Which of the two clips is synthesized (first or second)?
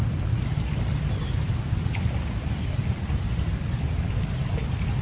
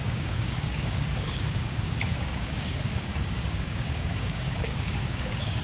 second